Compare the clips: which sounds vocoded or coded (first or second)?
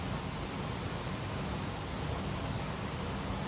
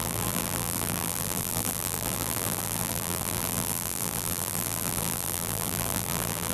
second